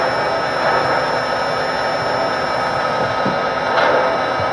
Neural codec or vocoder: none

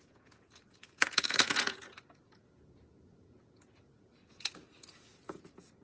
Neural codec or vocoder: vocoder, Vocos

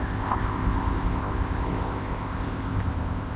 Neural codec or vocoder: codec, ZipCodec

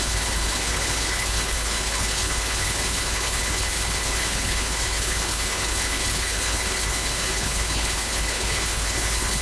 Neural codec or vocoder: codec, HILCodec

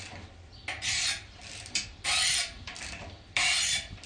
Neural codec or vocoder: vocoder, BigVGAN v2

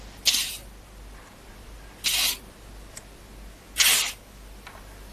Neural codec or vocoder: none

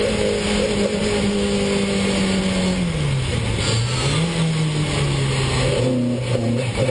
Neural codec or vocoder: none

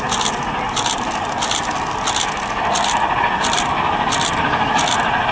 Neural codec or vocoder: none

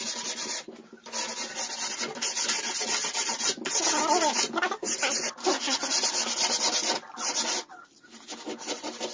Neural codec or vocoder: none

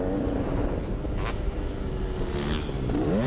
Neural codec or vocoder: none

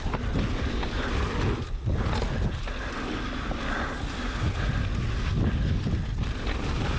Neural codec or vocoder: none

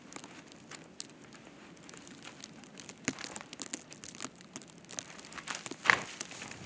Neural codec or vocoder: none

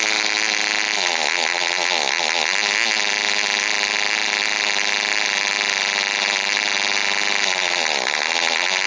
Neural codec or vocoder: none